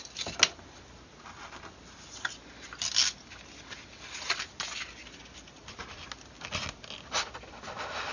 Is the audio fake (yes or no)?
no